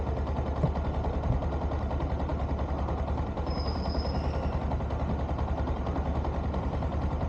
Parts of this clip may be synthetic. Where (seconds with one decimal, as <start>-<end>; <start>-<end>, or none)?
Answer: none